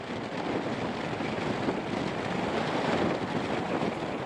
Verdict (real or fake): real